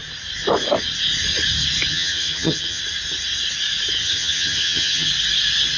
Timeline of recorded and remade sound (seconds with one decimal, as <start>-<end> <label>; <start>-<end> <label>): 0.0-1.9 recorded; 1.9-2.8 remade; 2.8-4.0 recorded; 4.0-5.1 remade; 5.1-5.8 recorded